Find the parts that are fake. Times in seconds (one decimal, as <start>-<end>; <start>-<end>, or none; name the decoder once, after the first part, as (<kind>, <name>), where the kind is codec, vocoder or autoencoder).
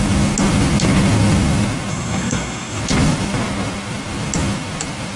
1.9-2.8 (codec, SNAC)